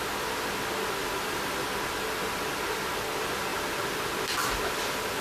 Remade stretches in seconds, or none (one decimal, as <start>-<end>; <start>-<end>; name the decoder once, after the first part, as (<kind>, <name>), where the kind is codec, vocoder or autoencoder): 1.0-1.6 (vocoder, BigVGAN v2); 3.5-4.8